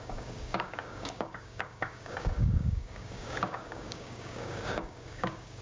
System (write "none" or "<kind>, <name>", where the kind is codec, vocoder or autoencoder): codec, DAC